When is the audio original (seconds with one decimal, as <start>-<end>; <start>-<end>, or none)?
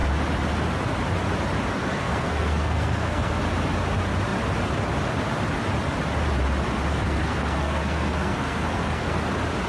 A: 0.0-1.8; 3.4-6.9; 9.2-9.7